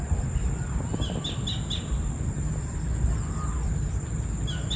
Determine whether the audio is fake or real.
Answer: real